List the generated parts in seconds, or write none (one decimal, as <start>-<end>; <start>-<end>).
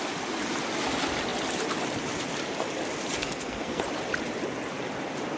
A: 3.2-3.8